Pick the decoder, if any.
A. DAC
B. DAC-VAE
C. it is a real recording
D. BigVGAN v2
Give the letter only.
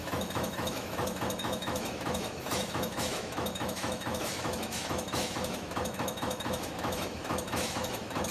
B